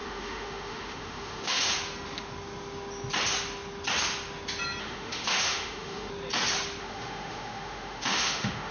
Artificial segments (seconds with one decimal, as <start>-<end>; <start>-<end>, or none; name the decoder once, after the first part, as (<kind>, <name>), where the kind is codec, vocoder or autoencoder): 0.0-1.7 (autoencoder, DAC-VAE); 4.8-6.1; 6.8-8.7